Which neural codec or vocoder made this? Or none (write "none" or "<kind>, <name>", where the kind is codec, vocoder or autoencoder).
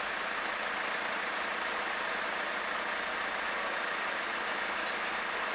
none